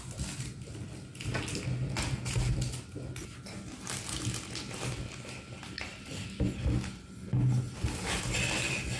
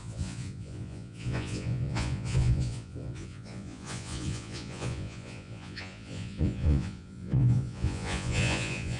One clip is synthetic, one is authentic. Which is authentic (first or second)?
first